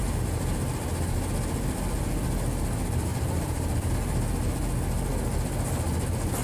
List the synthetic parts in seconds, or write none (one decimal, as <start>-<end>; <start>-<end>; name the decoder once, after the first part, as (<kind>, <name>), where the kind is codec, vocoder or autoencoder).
0.0-1.3 (vocoder, BigVGAN v2); 3.1-3.9